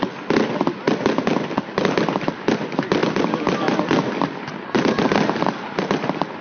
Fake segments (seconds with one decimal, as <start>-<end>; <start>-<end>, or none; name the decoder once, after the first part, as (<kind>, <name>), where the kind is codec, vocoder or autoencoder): 3.0-5.6 (vocoder, BigVGAN v2)